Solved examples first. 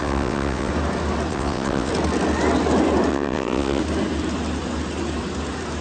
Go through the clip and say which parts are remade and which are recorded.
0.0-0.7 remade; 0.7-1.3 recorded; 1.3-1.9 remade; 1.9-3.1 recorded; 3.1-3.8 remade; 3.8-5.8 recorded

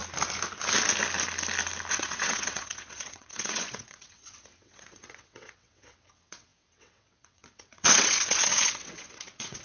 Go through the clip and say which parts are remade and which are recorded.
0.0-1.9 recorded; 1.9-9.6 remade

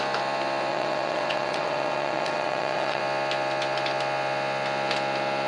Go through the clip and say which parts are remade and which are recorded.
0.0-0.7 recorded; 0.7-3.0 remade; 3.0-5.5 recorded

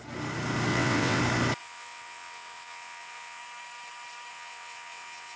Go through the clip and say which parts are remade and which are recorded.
0.0-0.7 recorded; 0.7-1.2 remade; 1.2-1.6 recorded; 1.6-3.4 remade; 3.4-4.3 recorded; 4.3-5.4 remade

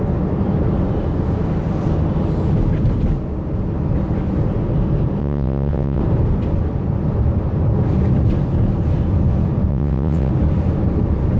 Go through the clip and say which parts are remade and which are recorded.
0.0-5.2 recorded; 5.2-6.0 remade; 6.0-9.7 recorded; 9.7-10.3 remade; 10.3-11.4 recorded